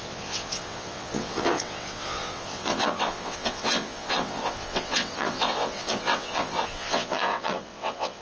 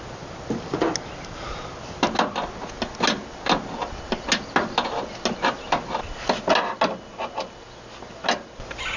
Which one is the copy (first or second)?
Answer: first